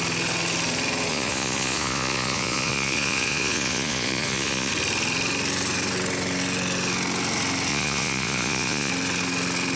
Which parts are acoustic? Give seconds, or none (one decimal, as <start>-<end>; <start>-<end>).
0.0-1.1; 4.7-7.7; 8.9-9.8